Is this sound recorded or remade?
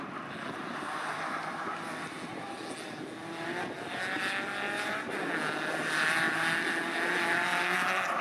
recorded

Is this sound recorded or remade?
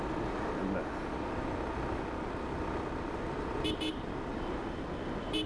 recorded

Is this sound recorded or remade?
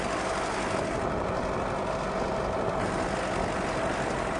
recorded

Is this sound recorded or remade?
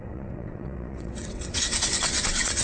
remade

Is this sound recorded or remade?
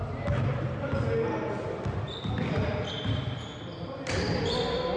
recorded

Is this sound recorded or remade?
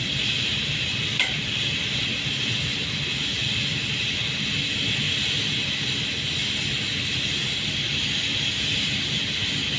recorded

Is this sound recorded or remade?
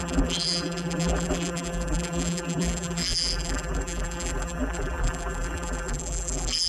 remade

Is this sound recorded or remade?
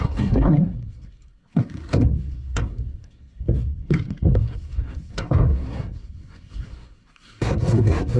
remade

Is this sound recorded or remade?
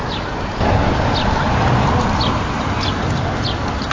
recorded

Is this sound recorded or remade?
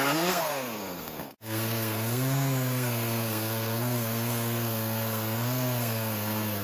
remade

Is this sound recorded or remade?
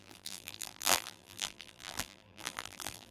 remade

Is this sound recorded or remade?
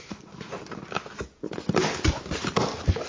recorded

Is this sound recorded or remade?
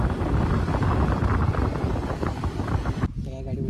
recorded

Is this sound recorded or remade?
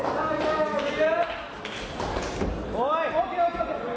recorded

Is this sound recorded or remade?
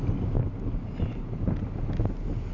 recorded